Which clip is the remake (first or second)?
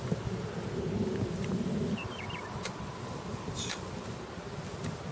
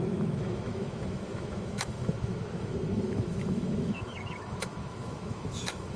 second